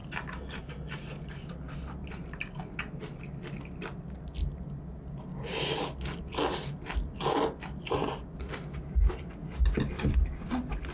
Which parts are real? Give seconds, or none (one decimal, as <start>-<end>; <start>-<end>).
0.0-10.9